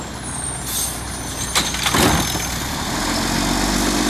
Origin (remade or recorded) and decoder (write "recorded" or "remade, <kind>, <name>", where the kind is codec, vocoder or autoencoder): recorded